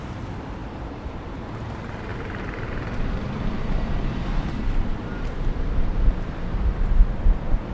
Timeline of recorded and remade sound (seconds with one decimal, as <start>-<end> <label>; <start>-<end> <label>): 0.0-0.6 recorded; 0.6-1.4 remade; 1.4-2.1 recorded; 2.1-6.7 remade; 6.7-7.7 recorded